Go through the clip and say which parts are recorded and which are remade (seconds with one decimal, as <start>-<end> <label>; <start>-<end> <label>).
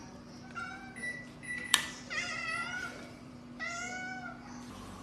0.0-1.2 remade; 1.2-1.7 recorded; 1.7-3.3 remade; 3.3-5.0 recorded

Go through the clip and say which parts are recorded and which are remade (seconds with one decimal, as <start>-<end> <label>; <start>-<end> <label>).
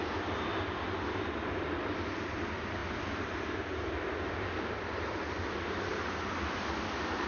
0.0-7.3 recorded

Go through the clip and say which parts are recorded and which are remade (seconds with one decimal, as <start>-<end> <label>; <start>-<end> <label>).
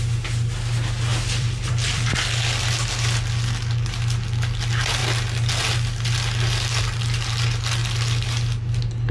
0.0-1.1 recorded; 1.1-2.1 remade; 2.1-9.1 recorded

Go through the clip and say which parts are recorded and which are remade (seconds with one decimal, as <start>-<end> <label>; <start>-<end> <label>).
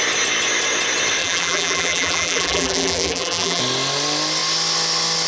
0.0-1.2 recorded; 1.2-3.6 remade; 3.6-5.3 recorded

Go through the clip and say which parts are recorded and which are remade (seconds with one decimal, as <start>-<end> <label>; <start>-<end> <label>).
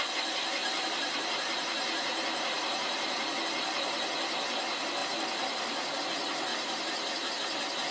0.0-0.6 recorded; 0.6-3.4 remade; 3.4-5.0 recorded; 5.0-6.0 remade; 6.0-6.5 recorded; 6.5-7.3 remade; 7.3-7.9 recorded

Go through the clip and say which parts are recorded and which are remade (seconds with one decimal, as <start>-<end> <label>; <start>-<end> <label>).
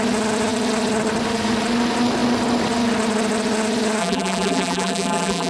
0.0-4.0 recorded; 4.0-5.5 remade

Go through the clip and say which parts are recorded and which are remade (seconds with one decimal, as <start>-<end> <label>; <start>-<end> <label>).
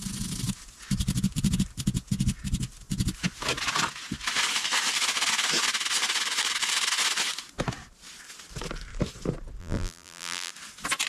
0.0-9.6 recorded; 9.6-10.5 remade; 10.5-11.1 recorded